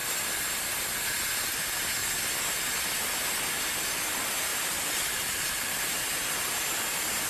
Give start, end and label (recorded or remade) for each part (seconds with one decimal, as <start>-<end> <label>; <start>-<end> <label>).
0.0-4.5 recorded; 4.5-6.6 remade; 6.6-7.3 recorded